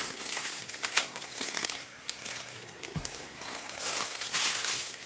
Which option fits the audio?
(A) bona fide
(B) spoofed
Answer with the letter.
B